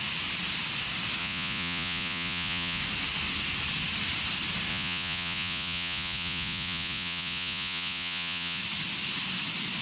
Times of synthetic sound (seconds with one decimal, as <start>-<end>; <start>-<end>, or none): 1.2-2.8; 4.7-8.6